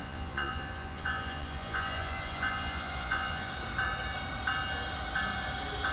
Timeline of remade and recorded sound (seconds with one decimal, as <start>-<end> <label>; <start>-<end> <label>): 0.0-3.5 remade; 3.5-5.9 recorded